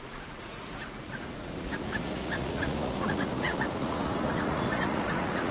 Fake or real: fake